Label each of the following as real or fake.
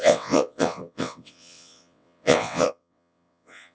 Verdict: fake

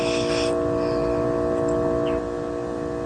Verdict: real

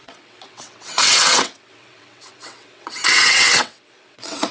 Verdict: fake